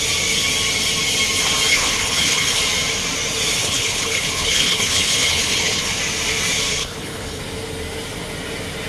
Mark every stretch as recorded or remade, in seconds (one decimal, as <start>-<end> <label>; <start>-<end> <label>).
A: 0.0-1.7 recorded; 1.7-2.6 remade; 2.6-3.6 recorded; 3.6-6.0 remade; 6.0-6.8 recorded; 6.8-7.4 remade; 7.4-8.9 recorded